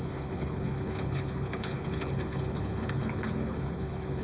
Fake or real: fake